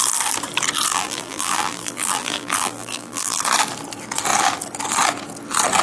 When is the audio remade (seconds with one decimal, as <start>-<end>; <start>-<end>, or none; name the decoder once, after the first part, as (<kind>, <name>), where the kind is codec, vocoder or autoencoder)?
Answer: 0.9-3.4 (vocoder, BigVGAN v2)